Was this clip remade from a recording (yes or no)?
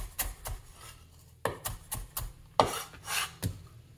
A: no